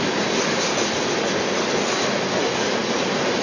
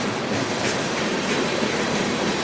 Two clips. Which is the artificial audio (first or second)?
second